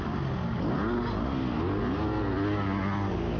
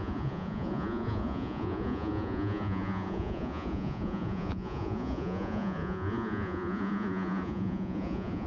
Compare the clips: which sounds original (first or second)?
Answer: first